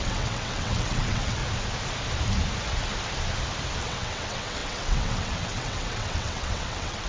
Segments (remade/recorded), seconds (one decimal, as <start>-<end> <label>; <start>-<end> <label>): 0.0-1.4 remade; 1.4-3.8 recorded; 3.8-7.1 remade